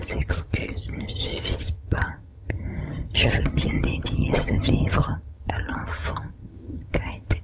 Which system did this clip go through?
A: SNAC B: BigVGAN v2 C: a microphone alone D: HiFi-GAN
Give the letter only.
D